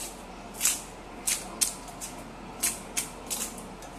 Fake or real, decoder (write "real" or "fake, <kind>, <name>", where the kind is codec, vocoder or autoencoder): real